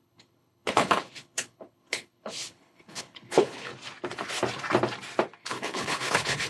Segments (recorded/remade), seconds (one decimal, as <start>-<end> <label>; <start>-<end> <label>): 0.0-3.7 remade; 3.7-5.4 recorded; 5.4-6.5 remade